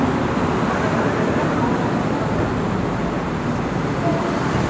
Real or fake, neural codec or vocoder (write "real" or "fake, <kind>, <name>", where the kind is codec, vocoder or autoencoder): real